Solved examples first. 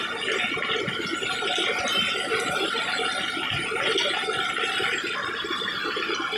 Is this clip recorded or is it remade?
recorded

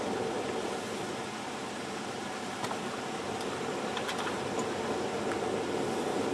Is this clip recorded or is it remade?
recorded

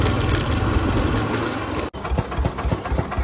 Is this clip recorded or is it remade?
recorded